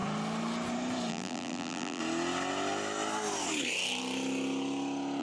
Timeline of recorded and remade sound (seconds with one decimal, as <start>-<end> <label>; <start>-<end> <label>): 0.0-1.1 recorded; 1.1-2.0 remade; 2.0-5.2 recorded